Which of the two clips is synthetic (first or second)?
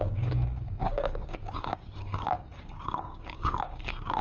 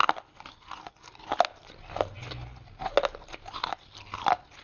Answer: first